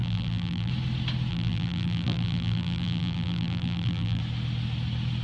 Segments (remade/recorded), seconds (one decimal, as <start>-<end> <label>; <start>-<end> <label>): 0.0-0.7 remade; 0.7-1.3 recorded; 1.3-4.2 remade; 4.2-5.2 recorded